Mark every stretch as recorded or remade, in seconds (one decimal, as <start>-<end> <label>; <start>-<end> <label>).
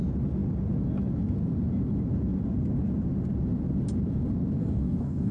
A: 0.0-4.6 recorded; 4.6-5.3 remade